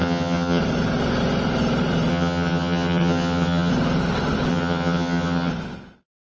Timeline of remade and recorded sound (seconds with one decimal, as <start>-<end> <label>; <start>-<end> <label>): 0.0-0.6 remade; 0.6-2.1 recorded; 2.1-3.7 remade; 3.7-4.5 recorded; 4.5-5.5 remade; 5.5-6.2 recorded

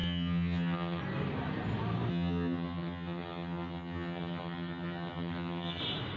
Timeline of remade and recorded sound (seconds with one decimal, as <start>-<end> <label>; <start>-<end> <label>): 0.0-1.0 remade; 1.0-2.1 recorded; 2.1-5.8 remade; 5.8-6.2 recorded

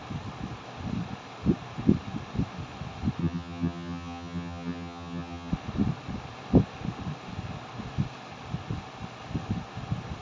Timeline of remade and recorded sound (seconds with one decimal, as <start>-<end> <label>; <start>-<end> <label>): 0.0-3.2 recorded; 3.2-5.5 remade; 5.5-10.2 recorded

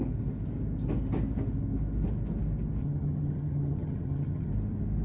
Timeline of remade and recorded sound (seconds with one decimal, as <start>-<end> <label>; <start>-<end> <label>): 0.0-2.8 recorded; 2.8-4.5 remade; 4.5-5.0 recorded

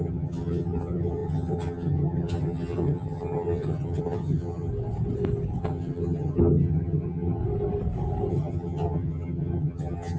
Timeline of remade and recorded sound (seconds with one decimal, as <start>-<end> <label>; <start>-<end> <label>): 0.0-4.7 remade; 4.7-5.6 recorded; 5.6-7.4 remade; 7.4-8.3 recorded; 8.3-10.2 remade

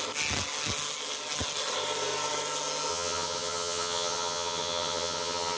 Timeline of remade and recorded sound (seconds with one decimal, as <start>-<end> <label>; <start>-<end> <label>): 0.0-2.9 recorded; 2.9-5.6 remade